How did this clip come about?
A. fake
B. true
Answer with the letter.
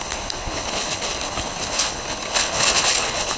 A